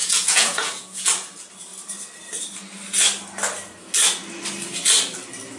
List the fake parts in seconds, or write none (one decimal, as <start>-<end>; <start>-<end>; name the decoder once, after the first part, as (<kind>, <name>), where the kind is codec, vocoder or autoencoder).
0.0-1.1 (vocoder, Vocos)